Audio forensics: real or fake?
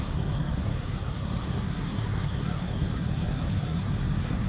fake